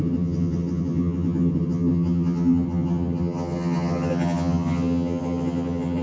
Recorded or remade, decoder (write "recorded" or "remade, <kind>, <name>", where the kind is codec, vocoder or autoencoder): remade, vocoder, HiFi-GAN